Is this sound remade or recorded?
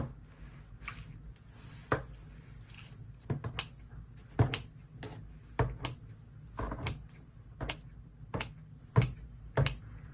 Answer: recorded